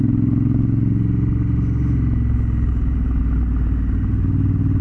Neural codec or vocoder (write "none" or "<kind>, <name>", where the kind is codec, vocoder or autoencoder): none